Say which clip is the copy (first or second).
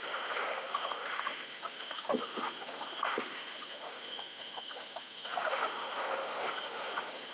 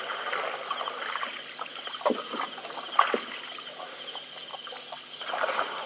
first